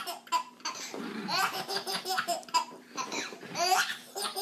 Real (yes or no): no